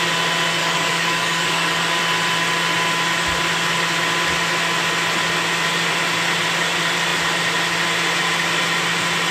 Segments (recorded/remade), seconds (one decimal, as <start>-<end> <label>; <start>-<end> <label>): 0.0-0.6 recorded; 0.6-2.0 remade; 2.0-9.3 recorded